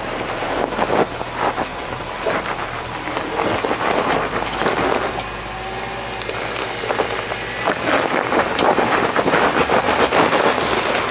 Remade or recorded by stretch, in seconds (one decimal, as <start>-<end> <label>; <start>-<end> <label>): 0.0-1.7 recorded; 1.7-3.2 remade; 3.2-11.1 recorded